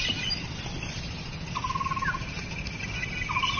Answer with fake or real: real